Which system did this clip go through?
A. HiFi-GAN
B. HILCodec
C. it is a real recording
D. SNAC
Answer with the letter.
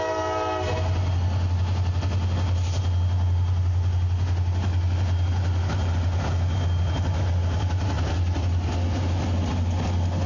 C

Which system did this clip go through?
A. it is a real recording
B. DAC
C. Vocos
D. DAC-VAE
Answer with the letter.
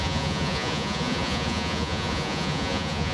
C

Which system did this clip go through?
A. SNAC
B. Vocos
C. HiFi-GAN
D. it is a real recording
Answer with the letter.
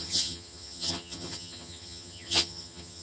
C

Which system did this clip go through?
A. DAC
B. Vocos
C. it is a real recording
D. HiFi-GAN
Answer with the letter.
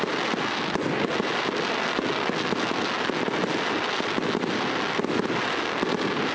C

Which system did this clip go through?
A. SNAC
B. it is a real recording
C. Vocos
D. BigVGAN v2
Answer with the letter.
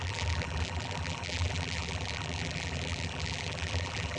D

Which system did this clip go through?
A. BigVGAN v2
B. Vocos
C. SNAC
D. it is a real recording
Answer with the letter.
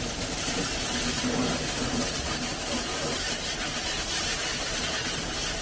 D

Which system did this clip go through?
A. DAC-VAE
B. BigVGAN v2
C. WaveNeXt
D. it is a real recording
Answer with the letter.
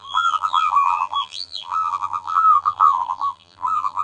B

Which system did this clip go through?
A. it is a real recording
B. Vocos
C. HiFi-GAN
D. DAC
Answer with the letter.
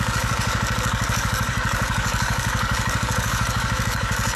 D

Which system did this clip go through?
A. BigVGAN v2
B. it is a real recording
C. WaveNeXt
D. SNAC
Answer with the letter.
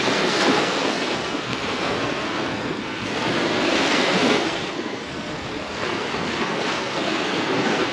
D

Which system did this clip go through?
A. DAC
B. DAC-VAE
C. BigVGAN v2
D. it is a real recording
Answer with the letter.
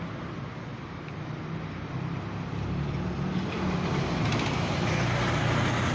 D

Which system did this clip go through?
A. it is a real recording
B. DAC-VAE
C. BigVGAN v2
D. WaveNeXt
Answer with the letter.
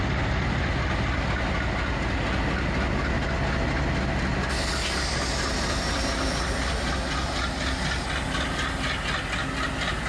A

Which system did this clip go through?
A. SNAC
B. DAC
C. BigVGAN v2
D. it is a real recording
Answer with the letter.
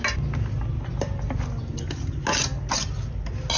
D